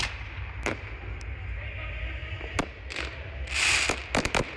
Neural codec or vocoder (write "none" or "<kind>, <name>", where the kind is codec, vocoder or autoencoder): none